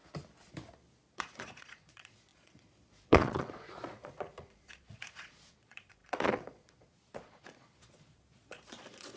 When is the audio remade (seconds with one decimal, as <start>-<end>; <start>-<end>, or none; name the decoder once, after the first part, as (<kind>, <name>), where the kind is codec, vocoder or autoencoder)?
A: 1.1-9.2 (vocoder, Vocos)